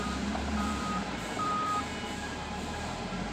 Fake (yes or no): yes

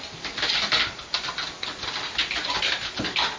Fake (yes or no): no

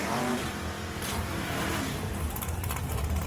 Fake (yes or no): yes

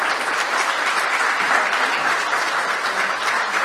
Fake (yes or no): no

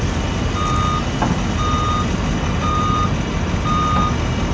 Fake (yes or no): no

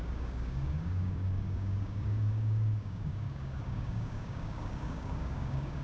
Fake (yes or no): yes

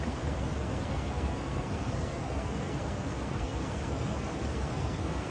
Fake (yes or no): yes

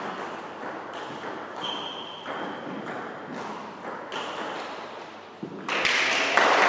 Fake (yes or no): no